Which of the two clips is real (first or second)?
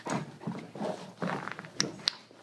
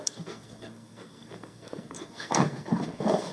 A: first